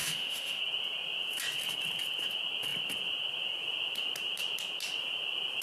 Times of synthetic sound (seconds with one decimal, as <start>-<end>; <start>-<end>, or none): 0.0-0.6